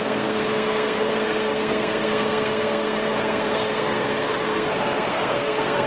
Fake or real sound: fake